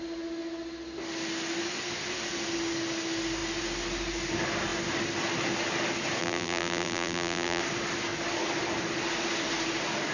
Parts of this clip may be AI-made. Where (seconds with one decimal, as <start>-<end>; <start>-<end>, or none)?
6.2-7.6